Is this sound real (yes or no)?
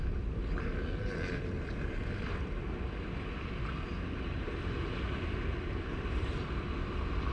yes